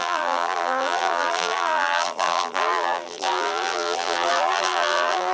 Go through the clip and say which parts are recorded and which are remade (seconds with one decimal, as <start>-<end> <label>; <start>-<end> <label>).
0.0-5.3 remade